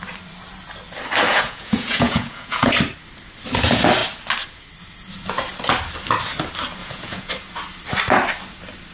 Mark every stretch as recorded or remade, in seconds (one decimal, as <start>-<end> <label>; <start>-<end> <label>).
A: 0.0-1.3 recorded; 1.3-2.7 remade; 2.7-6.8 recorded; 6.8-7.3 remade; 7.3-8.9 recorded